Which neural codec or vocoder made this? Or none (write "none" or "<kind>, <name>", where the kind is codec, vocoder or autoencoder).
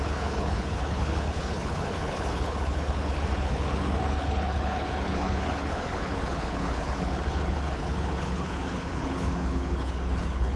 codec, HILCodec